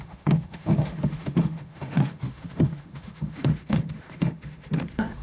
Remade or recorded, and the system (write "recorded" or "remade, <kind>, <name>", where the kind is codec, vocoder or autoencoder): remade, autoencoder, DAC-VAE